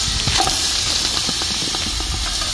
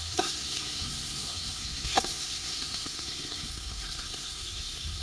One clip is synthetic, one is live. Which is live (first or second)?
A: first